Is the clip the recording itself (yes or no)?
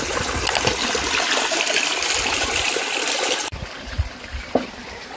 yes